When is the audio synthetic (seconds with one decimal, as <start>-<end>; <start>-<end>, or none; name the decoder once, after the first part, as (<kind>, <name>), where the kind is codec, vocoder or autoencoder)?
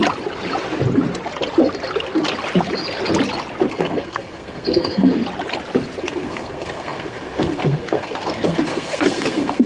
3.7-5.2 (codec, SNAC); 6.0-9.7